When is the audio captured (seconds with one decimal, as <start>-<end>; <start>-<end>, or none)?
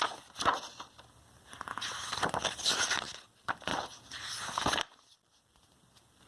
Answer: 0.0-6.3